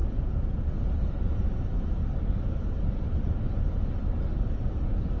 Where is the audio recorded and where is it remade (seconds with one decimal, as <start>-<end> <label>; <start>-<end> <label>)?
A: 0.0-0.8 remade; 0.8-5.2 recorded